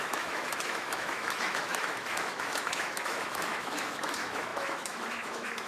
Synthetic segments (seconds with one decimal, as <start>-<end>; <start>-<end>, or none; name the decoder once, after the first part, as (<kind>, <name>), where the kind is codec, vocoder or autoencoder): 0.0-5.7 (autoencoder, DAC-VAE)